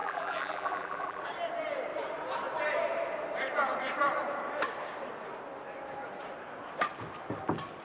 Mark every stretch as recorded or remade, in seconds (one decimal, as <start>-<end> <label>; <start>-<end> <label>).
0.0-1.2 remade; 1.2-7.8 recorded